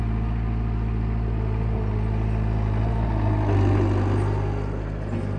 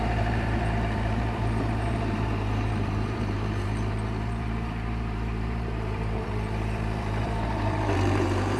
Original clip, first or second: first